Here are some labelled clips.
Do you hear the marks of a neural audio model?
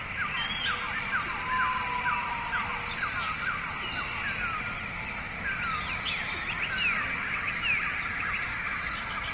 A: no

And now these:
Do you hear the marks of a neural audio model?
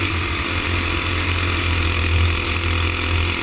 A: no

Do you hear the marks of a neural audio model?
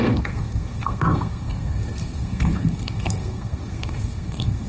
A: yes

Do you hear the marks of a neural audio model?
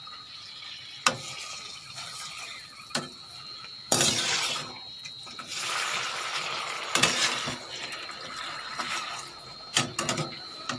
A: yes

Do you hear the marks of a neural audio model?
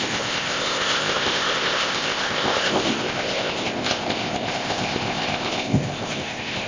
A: yes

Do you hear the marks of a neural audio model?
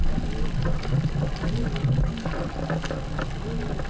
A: no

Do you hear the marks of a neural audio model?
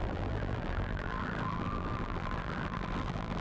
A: yes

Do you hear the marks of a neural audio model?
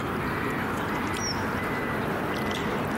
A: no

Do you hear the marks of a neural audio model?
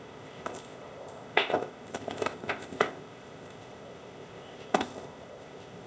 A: yes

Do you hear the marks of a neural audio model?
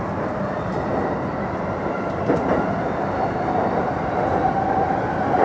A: no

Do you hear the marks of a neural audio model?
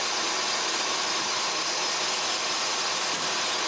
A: no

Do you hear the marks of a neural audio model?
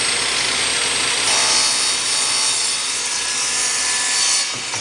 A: no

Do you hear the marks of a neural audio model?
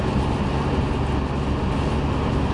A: no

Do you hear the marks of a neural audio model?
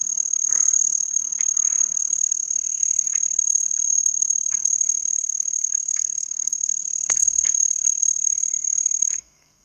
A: yes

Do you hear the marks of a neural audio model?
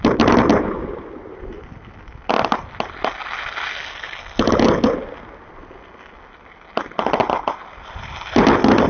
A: no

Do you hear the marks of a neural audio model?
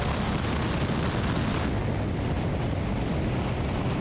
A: no